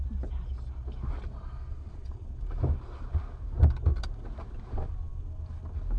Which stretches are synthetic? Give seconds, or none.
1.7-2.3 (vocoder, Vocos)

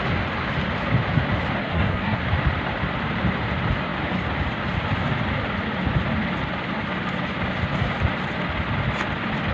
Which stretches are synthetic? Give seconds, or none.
1.6-2.2 (codec, SNAC)

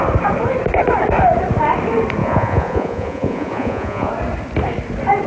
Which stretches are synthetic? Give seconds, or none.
2.2-4.1 (vocoder, Vocos)

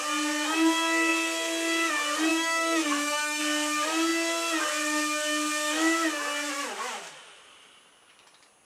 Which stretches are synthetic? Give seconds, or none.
2.3-3.4 (autoencoder, DAC-VAE)

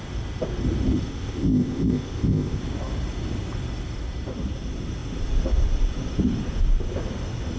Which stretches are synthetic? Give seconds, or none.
1.1-2.6 (codec, ZipCodec)

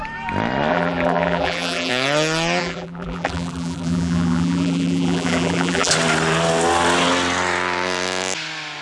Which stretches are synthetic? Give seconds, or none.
0.7-1.9 (vocoder, BigVGAN v2); 2.6-5.9

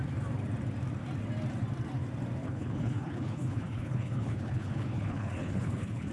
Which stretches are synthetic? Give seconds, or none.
2.4-6.1 (codec, HILCodec)